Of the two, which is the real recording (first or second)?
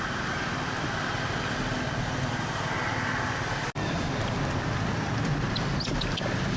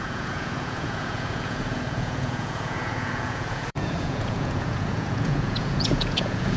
first